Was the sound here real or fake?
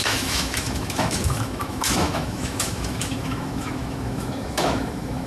fake